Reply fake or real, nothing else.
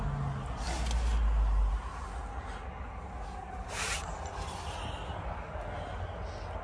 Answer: real